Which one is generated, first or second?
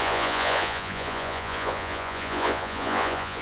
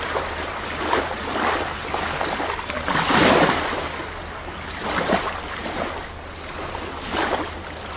first